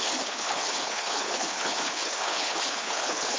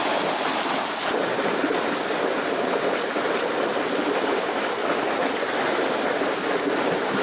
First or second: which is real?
second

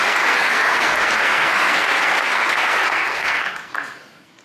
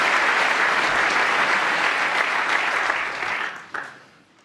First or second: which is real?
second